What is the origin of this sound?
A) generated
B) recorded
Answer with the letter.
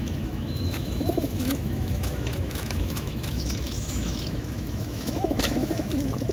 A